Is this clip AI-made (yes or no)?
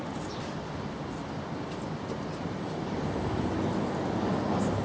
no